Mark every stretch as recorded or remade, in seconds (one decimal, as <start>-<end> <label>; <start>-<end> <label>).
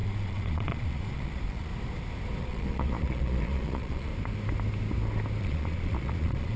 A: 0.0-1.7 remade; 1.7-2.4 recorded; 2.4-4.1 remade; 4.1-5.4 recorded; 5.4-6.6 remade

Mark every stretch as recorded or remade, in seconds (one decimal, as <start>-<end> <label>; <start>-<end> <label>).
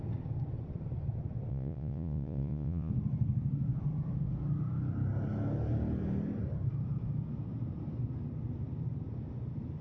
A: 0.0-1.5 recorded; 1.5-2.9 remade; 2.9-9.8 recorded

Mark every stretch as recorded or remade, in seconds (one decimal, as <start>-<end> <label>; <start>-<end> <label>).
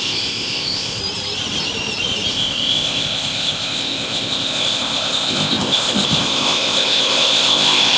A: 0.0-1.0 remade; 1.0-2.3 recorded; 2.3-8.0 remade